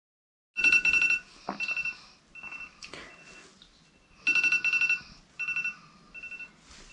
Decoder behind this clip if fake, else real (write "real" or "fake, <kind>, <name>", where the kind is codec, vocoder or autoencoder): real